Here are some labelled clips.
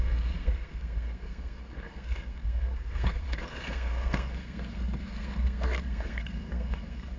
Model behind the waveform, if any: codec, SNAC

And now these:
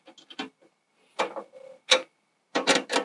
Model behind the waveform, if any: none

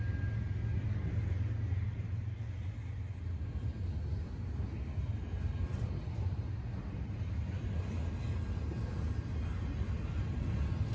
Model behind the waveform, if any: none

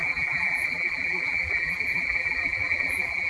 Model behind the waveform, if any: vocoder, BigVGAN v2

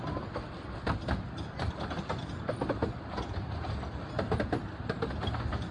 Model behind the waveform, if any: none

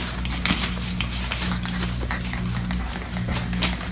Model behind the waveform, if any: none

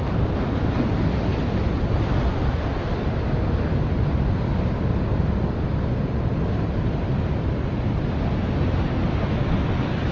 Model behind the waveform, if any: none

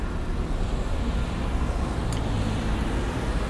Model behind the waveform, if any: none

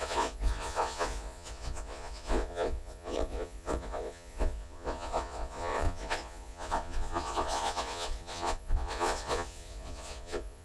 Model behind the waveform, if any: vocoder, Vocos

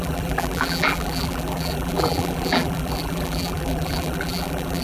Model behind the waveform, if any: vocoder, BigVGAN v2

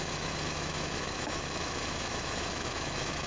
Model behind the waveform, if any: autoencoder, DAC-VAE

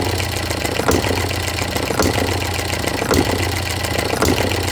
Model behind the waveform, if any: none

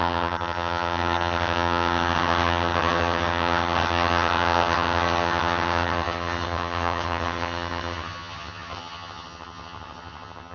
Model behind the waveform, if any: vocoder, HiFi-GAN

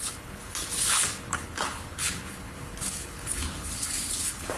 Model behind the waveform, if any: codec, HILCodec